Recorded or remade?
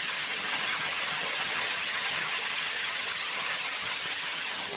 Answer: remade